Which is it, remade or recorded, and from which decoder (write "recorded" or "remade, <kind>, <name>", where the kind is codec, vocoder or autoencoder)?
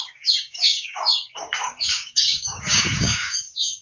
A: remade, codec, DAC